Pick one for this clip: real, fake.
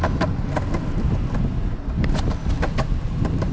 real